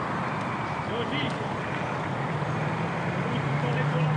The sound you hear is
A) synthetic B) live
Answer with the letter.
A